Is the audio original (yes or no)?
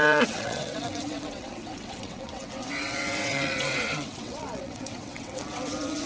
no